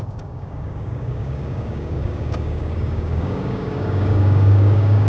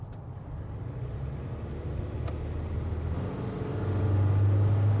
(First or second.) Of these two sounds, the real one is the second